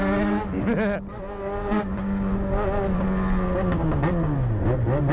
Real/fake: real